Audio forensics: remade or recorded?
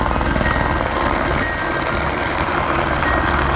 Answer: recorded